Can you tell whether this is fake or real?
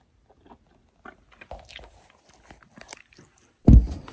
real